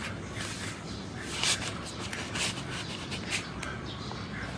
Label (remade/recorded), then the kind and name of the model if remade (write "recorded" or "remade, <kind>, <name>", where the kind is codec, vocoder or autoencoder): recorded